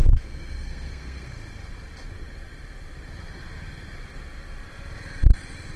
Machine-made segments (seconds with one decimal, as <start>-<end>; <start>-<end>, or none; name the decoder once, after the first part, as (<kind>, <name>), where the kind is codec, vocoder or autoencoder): 0.0-1.3 (codec, SNAC)